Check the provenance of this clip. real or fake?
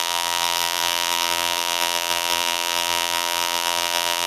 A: fake